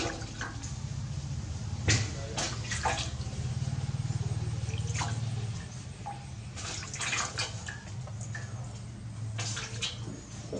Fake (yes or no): no